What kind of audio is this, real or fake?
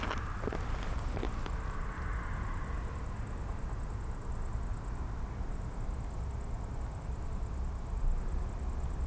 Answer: real